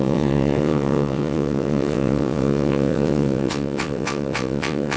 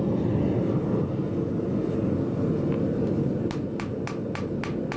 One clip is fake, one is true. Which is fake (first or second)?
first